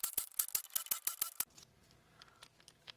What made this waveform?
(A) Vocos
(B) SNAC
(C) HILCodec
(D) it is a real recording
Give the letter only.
D